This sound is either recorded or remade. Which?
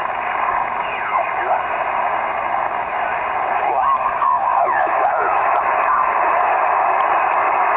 recorded